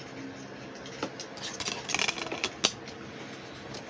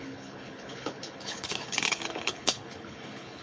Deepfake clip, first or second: second